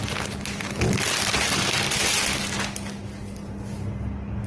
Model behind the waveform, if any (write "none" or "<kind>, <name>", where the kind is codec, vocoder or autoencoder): none